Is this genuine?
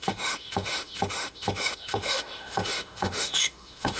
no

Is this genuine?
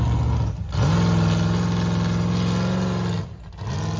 yes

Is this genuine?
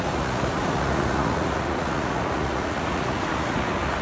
no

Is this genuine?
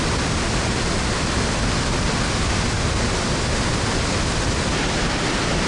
yes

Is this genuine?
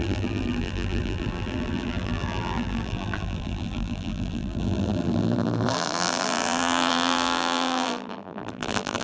no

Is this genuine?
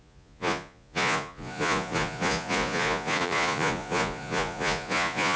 no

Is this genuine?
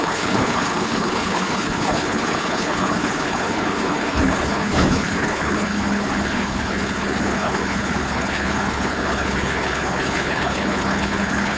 no